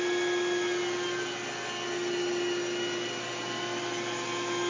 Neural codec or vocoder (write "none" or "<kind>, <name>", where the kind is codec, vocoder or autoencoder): none